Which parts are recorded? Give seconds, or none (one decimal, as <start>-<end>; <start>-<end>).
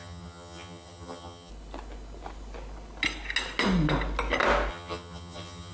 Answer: 1.5-4.7